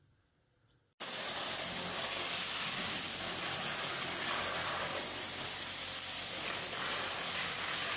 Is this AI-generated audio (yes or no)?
no